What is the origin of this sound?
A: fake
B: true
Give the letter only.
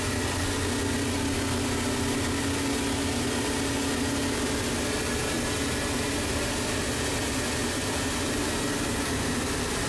B